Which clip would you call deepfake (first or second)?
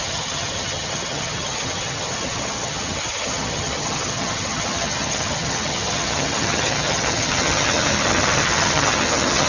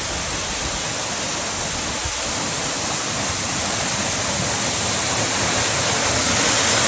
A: first